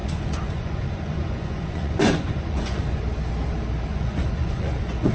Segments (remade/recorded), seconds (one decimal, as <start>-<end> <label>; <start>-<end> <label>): 0.0-3.0 remade; 3.0-3.9 recorded; 3.9-5.1 remade